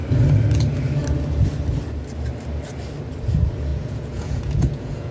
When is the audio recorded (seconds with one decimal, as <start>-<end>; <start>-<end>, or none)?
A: 0.0-3.7

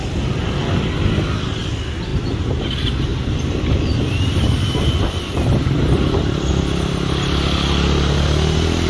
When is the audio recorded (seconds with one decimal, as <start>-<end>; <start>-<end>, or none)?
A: 0.5-3.1; 6.5-8.9

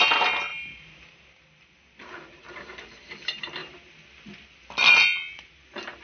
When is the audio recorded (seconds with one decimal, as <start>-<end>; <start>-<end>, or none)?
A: 0.0-0.5; 3.1-6.0

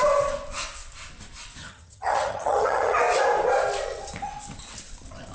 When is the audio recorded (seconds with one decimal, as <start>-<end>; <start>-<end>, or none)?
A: 0.0-1.6; 3.0-5.3

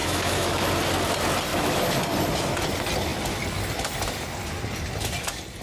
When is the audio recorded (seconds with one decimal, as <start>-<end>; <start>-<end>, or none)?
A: 0.7-1.5; 2.0-5.6

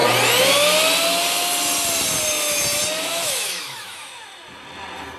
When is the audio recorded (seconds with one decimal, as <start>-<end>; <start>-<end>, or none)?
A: 0.0-3.1; 4.1-5.2

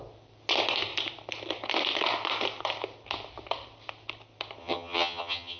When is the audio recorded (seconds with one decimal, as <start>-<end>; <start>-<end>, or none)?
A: 0.0-4.6